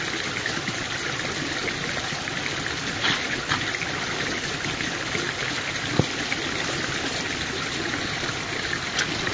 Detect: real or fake real